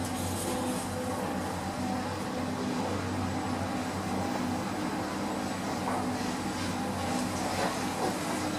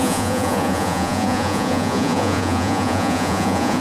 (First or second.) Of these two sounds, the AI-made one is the second